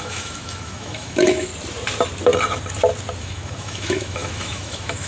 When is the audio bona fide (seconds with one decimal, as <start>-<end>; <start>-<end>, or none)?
1.5-3.2